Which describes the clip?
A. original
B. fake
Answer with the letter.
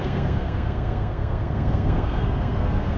B